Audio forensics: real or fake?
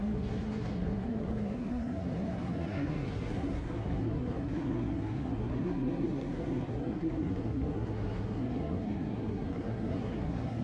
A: fake